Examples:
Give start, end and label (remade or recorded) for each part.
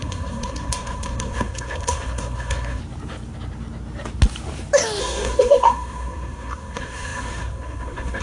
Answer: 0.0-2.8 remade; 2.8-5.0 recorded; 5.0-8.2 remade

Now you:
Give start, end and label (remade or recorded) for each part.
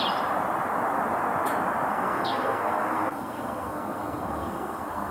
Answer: 0.0-1.9 recorded; 1.9-5.1 remade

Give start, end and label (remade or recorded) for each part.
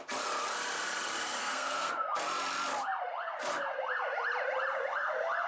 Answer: 0.0-1.4 recorded; 1.4-1.9 remade; 1.9-5.5 recorded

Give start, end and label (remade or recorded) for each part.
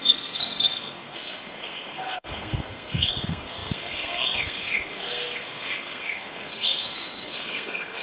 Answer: 0.0-8.0 remade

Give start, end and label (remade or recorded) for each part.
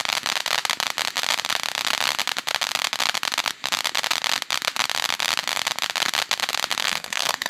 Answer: 0.0-6.8 recorded; 6.8-7.5 remade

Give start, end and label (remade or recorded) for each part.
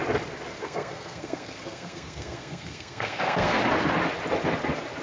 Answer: 0.0-0.6 recorded; 0.6-3.6 remade; 3.6-5.0 recorded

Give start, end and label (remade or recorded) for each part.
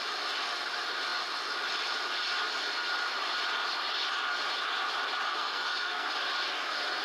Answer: 0.0-5.3 recorded; 5.3-6.1 remade; 6.1-7.0 recorded